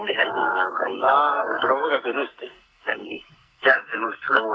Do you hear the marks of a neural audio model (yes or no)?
yes